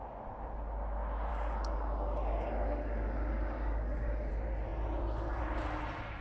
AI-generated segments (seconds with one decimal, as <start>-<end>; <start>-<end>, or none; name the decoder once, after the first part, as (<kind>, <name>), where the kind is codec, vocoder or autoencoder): 1.3-4.3 (codec, DAC)